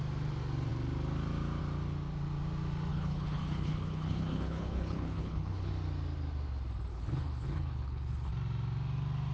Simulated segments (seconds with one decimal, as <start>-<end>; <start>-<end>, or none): 2.9-5.7; 6.9-8.3